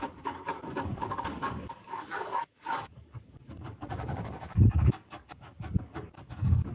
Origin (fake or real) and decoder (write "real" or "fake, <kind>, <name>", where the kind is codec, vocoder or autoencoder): fake, codec, DAC